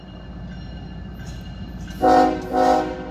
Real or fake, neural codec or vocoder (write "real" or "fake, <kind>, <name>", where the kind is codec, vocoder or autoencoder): real